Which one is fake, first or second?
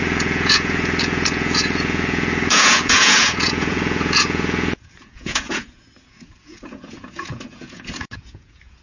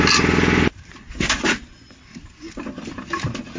first